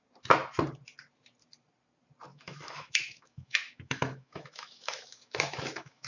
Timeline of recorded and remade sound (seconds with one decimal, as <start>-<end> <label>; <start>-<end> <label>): 0.0-2.3 recorded; 2.3-6.1 remade